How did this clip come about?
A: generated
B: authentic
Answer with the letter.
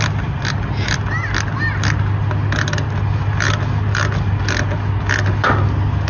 B